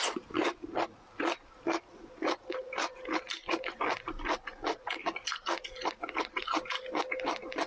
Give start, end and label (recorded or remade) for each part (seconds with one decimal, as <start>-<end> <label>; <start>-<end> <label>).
0.0-7.7 recorded